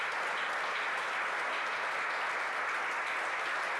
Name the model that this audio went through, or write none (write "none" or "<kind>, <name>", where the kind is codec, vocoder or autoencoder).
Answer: none